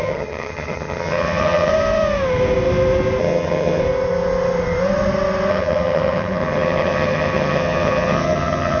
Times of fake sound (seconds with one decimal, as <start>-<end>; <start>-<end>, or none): 0.0-1.7; 3.2-3.8; 5.5-8.8